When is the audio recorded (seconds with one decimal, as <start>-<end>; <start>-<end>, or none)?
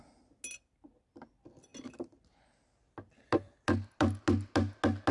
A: 0.0-5.1